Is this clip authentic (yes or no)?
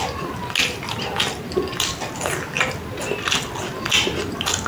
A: yes